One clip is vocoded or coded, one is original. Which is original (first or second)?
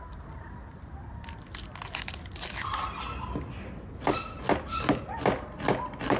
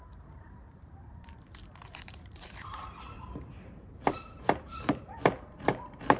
first